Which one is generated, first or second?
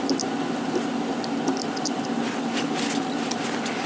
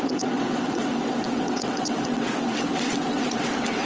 second